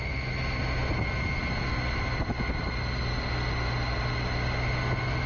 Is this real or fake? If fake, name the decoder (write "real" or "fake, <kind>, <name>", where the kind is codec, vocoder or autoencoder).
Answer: real